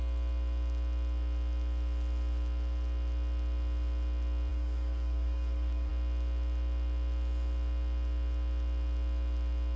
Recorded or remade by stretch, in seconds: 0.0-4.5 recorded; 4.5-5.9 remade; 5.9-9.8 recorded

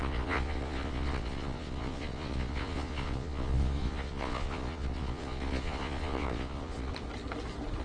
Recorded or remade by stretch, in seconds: 0.0-6.9 remade; 6.9-7.8 recorded

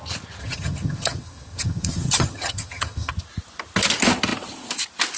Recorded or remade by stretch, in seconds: 0.0-0.4 recorded; 0.4-3.1 remade; 3.1-5.2 recorded

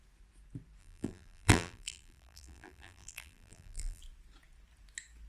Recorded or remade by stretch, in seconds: 0.0-0.8 recorded; 0.8-4.0 remade; 4.0-5.3 recorded

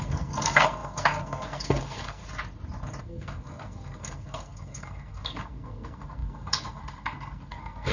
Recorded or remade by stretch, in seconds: 0.0-2.2 remade; 2.2-3.0 recorded; 3.0-7.9 remade